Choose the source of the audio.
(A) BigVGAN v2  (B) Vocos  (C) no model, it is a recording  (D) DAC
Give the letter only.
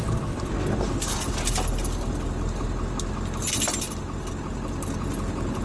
C